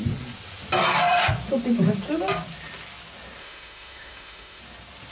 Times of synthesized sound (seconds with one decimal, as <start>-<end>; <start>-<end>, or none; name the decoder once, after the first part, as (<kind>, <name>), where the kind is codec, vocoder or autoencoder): 3.4-4.6 (autoencoder, DAC-VAE)